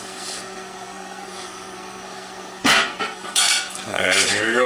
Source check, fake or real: fake